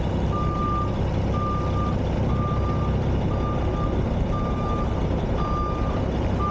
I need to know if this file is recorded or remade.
recorded